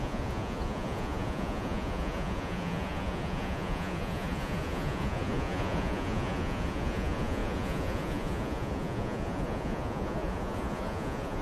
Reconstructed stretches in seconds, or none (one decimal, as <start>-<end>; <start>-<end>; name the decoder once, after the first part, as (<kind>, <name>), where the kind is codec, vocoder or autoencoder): 0.0-11.4 (vocoder, Vocos)